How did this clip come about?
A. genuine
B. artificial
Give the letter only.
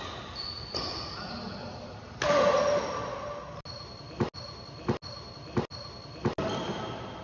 A